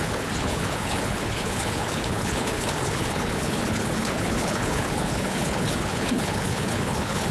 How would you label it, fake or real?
fake